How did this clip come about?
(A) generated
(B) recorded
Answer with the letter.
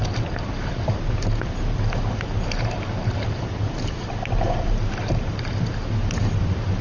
B